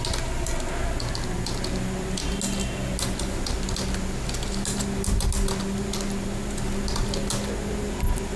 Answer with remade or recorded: recorded